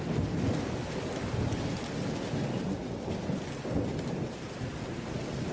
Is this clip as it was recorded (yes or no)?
yes